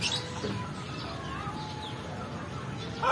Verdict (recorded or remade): recorded